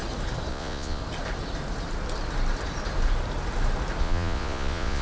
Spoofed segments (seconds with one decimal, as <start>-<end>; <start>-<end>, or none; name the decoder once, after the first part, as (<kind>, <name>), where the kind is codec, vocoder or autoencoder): 0.5-1.0 (vocoder, Vocos); 4.0-5.0